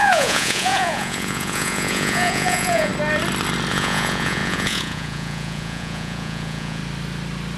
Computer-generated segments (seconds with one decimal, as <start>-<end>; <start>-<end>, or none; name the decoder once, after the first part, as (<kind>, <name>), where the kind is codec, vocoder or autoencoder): 0.0-2.9 (vocoder, Vocos); 3.7-6.8